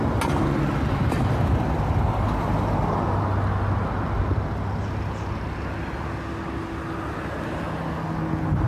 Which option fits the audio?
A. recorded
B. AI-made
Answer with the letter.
A